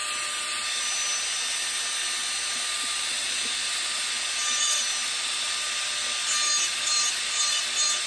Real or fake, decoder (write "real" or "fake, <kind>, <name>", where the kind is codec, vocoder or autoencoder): real